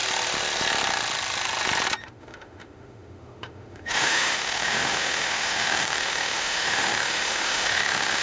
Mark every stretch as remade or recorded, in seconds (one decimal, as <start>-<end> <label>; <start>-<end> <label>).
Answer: 0.0-2.0 recorded; 2.0-8.2 remade